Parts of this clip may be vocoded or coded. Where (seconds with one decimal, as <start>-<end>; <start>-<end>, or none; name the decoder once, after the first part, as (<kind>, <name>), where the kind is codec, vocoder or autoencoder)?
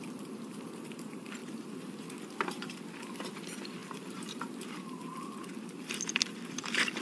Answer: 0.0-1.4 (vocoder, BigVGAN v2); 3.3-7.0